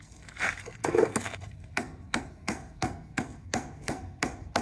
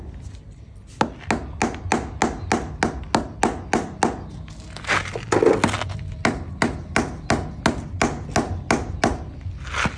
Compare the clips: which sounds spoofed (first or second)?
first